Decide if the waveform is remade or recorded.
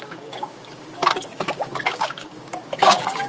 remade